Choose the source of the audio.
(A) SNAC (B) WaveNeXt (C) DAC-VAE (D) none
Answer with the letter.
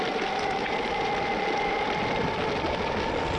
D